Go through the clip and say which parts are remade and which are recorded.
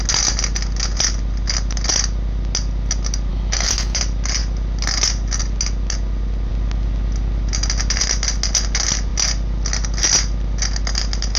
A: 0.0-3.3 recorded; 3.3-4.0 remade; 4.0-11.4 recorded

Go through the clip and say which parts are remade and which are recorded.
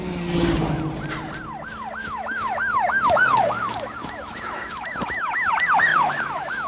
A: 0.0-2.0 recorded; 2.0-5.5 remade; 5.5-5.9 recorded; 5.9-6.7 remade